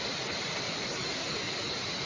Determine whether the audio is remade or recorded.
recorded